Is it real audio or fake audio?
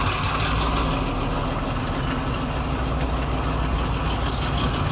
real